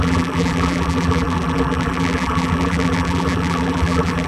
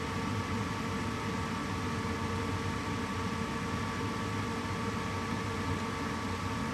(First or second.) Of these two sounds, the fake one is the first